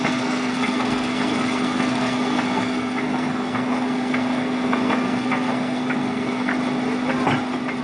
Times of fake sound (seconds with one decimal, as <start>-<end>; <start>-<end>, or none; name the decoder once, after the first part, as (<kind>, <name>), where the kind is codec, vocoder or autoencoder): 0.0-6.5 (codec, SNAC)